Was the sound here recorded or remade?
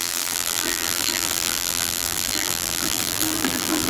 remade